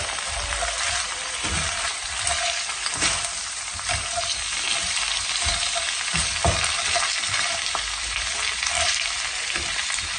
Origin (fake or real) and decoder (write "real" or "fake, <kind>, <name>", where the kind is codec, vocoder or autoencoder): fake, vocoder, BigVGAN v2